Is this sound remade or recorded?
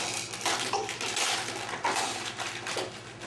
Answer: recorded